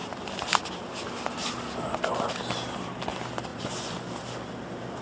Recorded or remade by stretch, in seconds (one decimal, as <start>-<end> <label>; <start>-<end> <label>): 0.0-3.5 recorded; 3.5-4.1 remade; 4.1-5.0 recorded